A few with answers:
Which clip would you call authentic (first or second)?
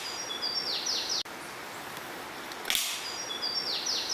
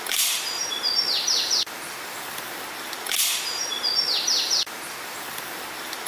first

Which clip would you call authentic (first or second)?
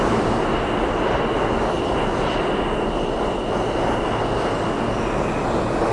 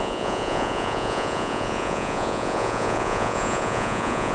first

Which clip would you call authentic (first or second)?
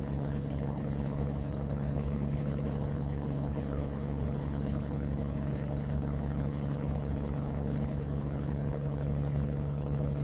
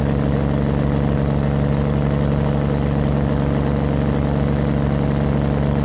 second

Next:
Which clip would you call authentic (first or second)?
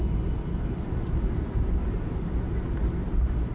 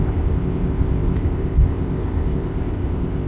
first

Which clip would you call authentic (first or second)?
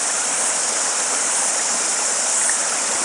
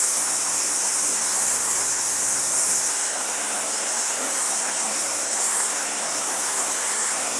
first